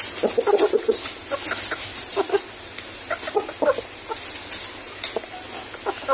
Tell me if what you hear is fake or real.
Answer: real